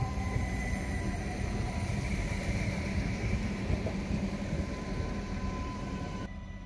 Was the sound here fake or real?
fake